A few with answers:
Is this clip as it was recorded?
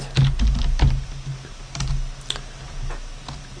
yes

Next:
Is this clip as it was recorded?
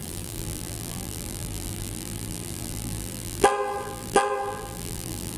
no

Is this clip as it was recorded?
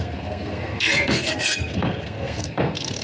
no